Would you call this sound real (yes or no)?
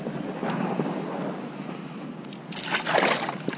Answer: yes